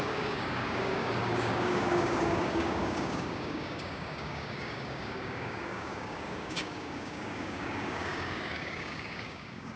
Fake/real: fake